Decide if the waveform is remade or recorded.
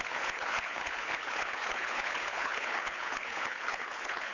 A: remade